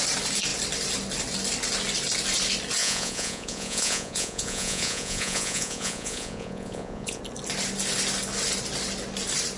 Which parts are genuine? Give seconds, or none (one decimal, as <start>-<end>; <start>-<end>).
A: 0.0-2.8; 7.2-9.6